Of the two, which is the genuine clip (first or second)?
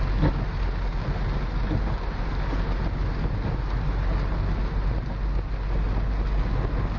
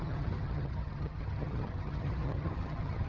first